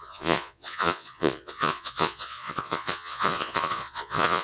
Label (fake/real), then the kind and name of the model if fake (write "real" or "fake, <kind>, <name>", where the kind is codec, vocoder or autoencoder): fake, vocoder, Vocos